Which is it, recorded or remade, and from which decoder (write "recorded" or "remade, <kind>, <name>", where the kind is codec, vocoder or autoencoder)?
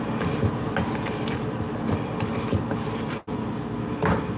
recorded